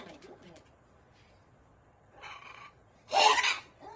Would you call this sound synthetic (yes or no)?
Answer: yes